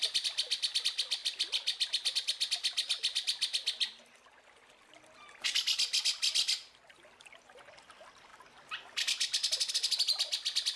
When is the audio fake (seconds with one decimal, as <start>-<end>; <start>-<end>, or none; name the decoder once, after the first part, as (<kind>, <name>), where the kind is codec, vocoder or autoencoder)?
none